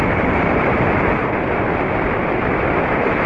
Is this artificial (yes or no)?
yes